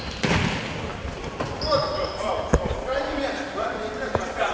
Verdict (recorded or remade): recorded